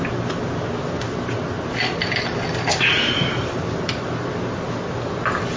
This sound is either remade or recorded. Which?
recorded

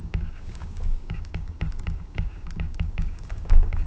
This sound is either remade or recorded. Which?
remade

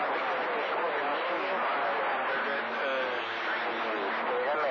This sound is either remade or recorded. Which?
recorded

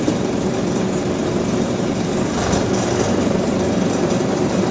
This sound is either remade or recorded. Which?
remade